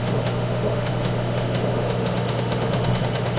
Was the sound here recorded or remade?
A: remade